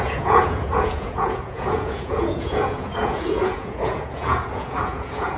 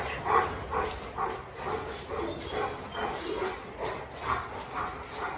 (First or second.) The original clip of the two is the second